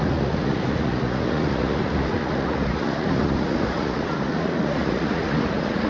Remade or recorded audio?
remade